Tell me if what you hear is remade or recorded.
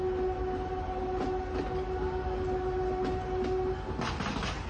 recorded